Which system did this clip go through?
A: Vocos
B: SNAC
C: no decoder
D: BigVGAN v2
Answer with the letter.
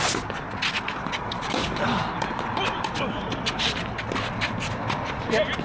C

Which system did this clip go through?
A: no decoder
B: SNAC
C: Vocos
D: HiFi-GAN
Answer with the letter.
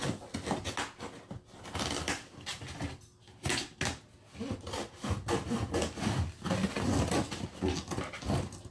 A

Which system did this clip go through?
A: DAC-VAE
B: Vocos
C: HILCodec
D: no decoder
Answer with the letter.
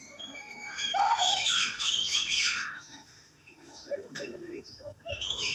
A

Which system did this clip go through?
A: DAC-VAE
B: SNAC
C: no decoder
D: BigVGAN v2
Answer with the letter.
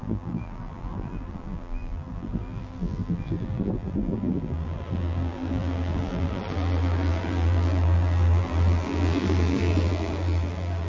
D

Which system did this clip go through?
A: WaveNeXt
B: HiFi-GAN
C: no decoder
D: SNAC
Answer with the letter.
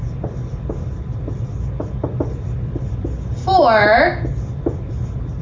C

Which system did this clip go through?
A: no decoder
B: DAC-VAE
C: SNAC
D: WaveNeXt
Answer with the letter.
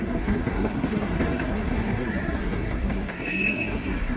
C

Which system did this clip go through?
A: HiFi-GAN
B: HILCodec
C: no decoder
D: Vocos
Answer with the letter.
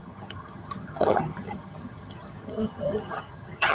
A